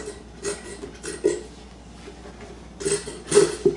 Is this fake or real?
real